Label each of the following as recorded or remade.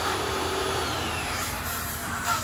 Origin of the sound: remade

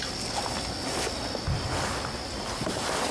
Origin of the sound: recorded